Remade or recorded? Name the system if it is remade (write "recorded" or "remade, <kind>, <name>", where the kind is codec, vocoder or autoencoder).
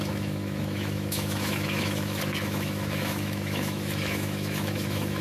remade, autoencoder, DAC-VAE